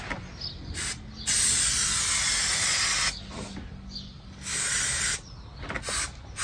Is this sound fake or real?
real